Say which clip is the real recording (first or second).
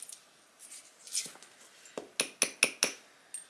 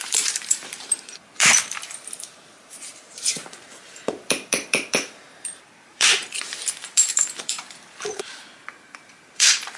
first